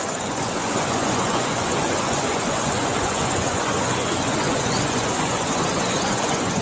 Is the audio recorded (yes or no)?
no